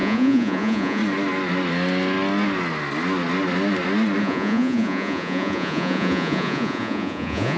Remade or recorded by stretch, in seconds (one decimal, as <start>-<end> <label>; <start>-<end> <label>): 0.0-1.0 remade; 1.0-4.2 recorded; 4.2-7.6 remade